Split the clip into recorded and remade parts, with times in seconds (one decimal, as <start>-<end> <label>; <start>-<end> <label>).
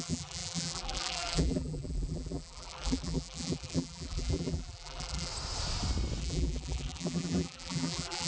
0.0-5.3 remade; 5.3-6.2 recorded; 6.2-8.3 remade